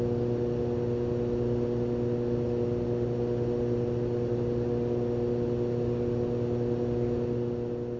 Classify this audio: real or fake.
real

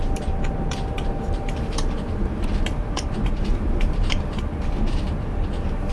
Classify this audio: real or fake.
fake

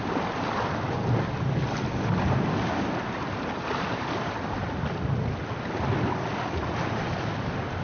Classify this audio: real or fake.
real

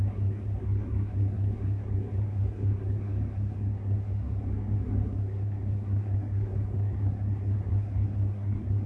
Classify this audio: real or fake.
fake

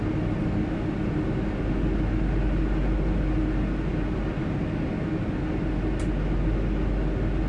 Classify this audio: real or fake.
real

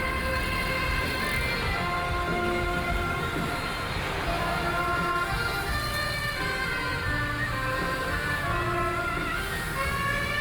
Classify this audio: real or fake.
real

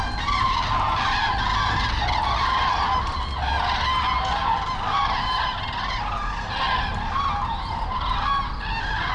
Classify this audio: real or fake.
real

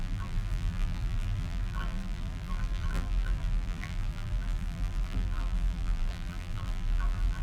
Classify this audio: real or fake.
fake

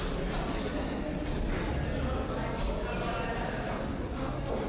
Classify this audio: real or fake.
real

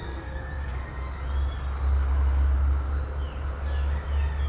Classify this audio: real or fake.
real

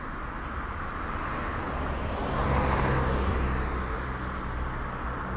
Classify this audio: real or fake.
real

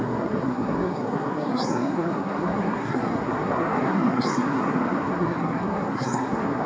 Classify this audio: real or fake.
fake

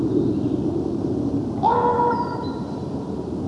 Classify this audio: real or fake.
fake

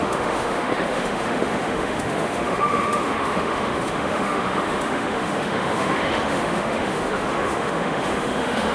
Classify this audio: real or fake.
fake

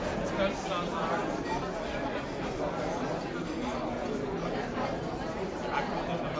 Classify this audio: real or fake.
real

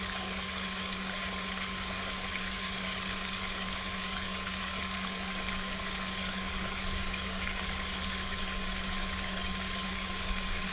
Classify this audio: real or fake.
fake